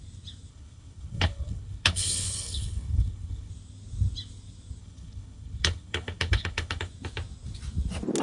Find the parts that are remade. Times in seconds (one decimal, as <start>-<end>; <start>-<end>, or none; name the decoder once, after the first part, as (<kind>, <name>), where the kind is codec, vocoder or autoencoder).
0.5-3.5 (codec, HILCodec); 4.8-6.9